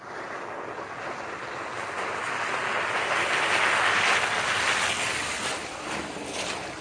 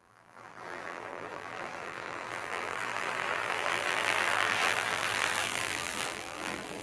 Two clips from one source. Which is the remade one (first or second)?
second